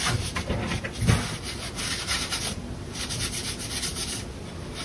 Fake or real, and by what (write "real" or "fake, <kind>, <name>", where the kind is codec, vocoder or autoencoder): real